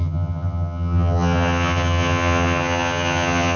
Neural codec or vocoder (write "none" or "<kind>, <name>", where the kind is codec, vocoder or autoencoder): vocoder, HiFi-GAN